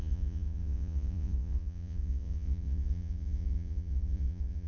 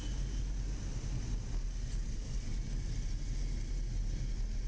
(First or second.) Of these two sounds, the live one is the second